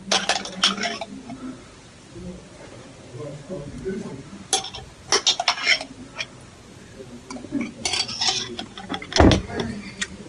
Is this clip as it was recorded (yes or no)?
yes